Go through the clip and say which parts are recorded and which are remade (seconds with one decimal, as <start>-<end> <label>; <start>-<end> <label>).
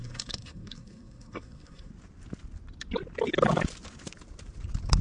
0.0-1.9 remade; 1.9-5.0 recorded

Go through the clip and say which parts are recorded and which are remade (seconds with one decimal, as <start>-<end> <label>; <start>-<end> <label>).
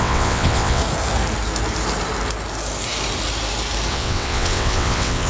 0.0-0.8 remade; 0.8-3.9 recorded; 3.9-5.3 remade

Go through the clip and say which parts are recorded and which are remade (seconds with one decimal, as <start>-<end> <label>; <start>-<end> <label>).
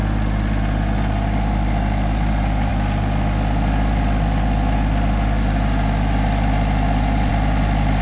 0.0-8.0 recorded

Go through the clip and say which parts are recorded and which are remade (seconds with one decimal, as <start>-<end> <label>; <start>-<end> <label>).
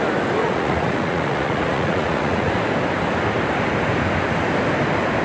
0.0-0.4 recorded; 0.4-2.5 remade; 2.5-5.2 recorded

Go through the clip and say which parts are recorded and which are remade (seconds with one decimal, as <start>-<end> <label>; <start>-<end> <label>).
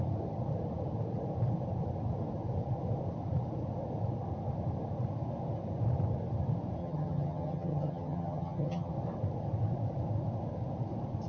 0.0-6.8 recorded; 6.8-8.9 remade; 8.9-11.3 recorded